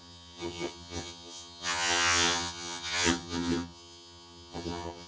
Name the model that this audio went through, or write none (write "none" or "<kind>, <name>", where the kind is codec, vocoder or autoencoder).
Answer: vocoder, HiFi-GAN